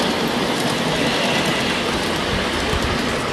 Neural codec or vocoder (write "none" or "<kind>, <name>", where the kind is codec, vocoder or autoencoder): none